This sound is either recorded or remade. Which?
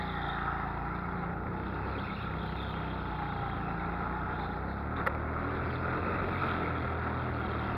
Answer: recorded